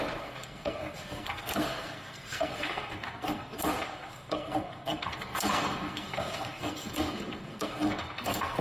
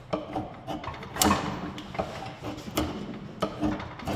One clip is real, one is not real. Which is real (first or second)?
second